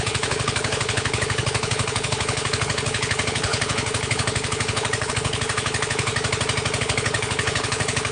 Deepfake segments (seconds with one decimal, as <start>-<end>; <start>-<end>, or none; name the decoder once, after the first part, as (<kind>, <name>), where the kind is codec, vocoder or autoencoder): 0.0-6.1 (codec, HILCodec); 6.8-8.1